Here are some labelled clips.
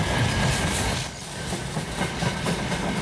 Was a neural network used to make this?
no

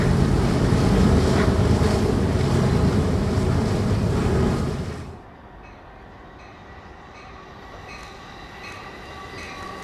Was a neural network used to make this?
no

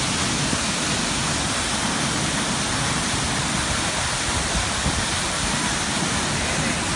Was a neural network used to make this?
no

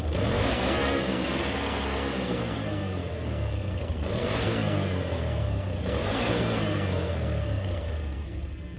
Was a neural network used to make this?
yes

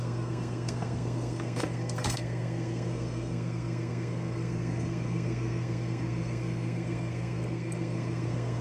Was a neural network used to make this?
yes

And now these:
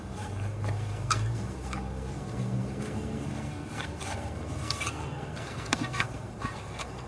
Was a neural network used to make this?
yes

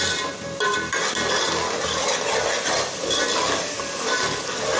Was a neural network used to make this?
no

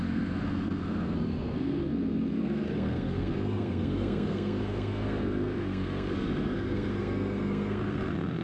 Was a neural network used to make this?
yes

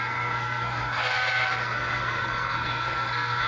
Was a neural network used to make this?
yes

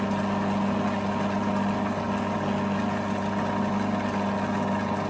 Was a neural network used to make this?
no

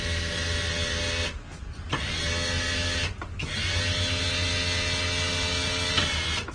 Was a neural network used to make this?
no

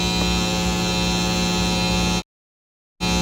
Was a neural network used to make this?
no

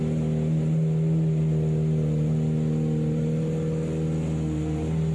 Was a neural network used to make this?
no